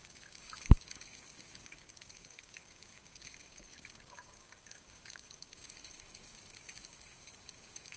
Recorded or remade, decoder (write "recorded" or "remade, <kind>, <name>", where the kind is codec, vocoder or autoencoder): remade, codec, DAC